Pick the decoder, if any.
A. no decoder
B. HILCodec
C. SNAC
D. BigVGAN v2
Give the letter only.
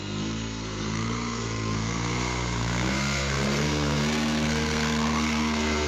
C